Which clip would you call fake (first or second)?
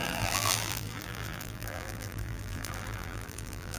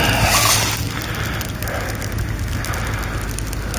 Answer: first